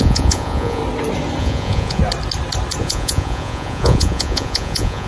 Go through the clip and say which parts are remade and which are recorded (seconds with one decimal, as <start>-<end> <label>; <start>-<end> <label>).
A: 0.0-0.8 remade; 0.8-1.4 recorded; 1.4-2.0 remade; 2.0-2.8 recorded; 2.8-5.1 remade